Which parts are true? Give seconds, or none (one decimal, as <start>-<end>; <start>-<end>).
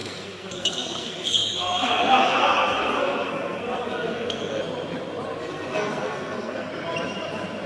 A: 4.6-5.4; 6.7-7.7